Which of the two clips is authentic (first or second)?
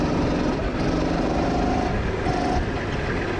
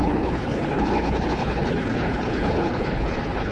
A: first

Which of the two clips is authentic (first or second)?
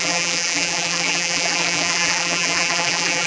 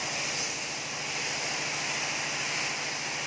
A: second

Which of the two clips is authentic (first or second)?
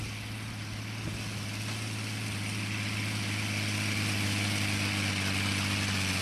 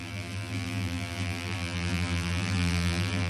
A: first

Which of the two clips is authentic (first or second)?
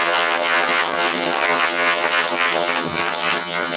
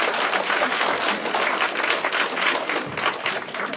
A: second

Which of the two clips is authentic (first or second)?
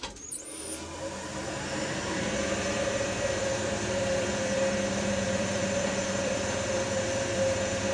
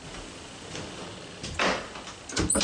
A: second